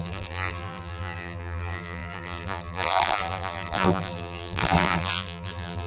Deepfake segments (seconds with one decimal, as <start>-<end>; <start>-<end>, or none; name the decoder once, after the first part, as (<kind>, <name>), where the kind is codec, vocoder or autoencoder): 0.0-5.9 (vocoder, BigVGAN v2)